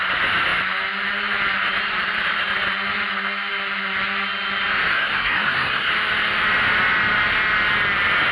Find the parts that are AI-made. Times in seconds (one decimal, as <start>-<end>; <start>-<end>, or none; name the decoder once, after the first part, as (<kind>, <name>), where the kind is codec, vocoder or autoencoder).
4.9-5.9 (codec, SNAC)